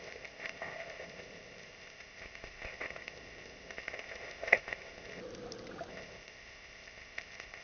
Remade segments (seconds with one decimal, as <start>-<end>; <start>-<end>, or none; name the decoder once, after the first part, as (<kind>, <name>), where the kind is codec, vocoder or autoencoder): 0.0-5.2 (codec, ZipCodec); 5.9-7.6